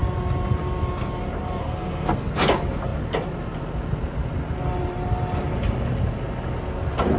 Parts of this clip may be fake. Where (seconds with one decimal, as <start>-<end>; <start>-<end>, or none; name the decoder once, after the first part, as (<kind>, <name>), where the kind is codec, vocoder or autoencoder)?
1.6-2.3 (codec, SNAC)